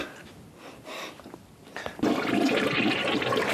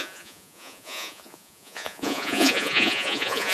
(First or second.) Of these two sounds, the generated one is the second